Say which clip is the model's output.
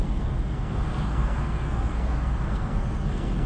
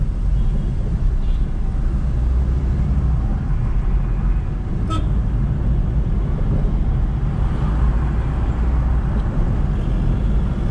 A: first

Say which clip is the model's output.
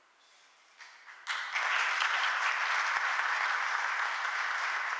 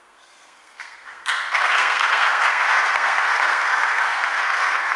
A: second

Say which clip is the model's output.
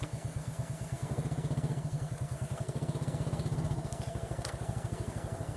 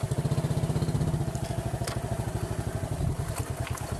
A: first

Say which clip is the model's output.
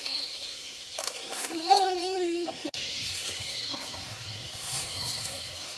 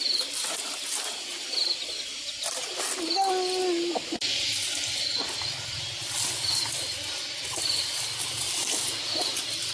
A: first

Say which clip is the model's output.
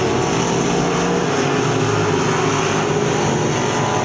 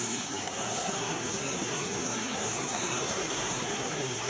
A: second